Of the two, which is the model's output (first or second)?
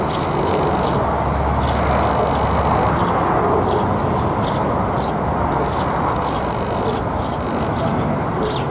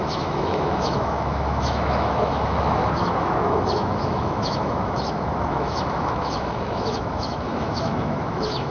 second